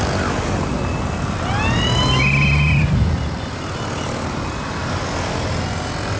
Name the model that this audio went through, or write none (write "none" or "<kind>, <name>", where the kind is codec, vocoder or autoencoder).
none